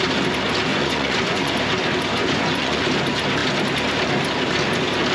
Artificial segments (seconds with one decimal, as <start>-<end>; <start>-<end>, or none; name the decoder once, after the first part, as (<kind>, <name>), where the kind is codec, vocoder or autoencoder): 0.7-1.5 (vocoder, Vocos); 2.2-2.8